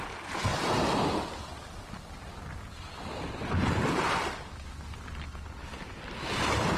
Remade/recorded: recorded